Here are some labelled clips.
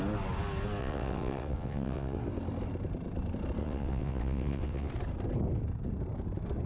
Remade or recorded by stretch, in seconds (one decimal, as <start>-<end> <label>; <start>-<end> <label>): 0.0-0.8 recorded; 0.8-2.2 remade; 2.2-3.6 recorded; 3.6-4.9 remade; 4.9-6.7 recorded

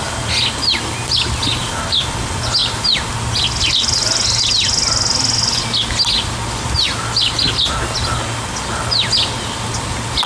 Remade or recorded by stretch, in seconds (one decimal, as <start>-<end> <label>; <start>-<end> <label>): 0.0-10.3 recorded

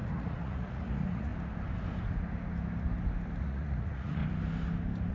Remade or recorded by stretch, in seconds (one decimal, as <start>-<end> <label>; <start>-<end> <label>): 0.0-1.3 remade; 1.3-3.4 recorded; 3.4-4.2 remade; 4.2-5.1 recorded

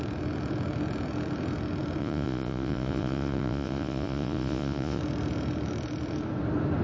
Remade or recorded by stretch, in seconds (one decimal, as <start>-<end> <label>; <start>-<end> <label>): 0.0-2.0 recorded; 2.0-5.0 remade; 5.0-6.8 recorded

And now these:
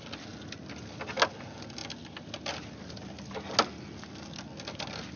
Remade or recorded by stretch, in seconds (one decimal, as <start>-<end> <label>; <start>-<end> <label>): 0.0-5.2 recorded

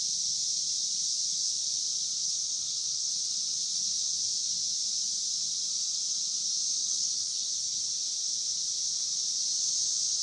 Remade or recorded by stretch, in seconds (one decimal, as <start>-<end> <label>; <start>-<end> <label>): 0.0-1.3 recorded; 1.3-1.8 remade; 1.8-2.2 recorded; 2.2-3.1 remade; 3.1-3.6 recorded; 3.6-4.2 remade; 4.2-6.8 recorded; 6.8-7.8 remade; 7.8-10.2 recorded

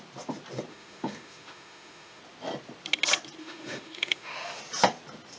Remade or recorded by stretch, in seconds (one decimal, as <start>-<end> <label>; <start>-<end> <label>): 0.0-0.7 recorded; 0.7-2.2 remade; 2.2-3.4 recorded; 3.4-4.6 remade; 4.6-5.4 recorded

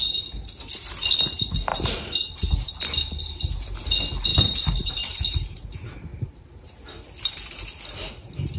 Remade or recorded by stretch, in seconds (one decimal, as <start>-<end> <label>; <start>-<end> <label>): 0.0-1.7 recorded; 1.7-2.7 remade; 2.7-4.3 recorded; 4.3-4.9 remade; 4.9-6.1 recorded; 6.1-6.7 remade; 6.7-8.6 recorded